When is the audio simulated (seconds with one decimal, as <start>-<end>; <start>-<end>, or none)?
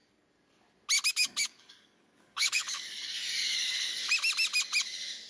1.1-4.0